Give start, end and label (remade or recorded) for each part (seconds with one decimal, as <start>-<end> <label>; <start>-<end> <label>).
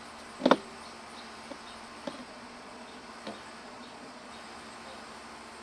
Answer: 0.0-2.2 recorded; 2.2-3.1 remade; 3.1-3.6 recorded; 3.6-4.3 remade; 4.3-5.6 recorded